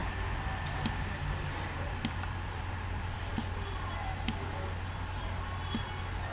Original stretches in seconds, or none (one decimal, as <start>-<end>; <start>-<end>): 3.2-6.3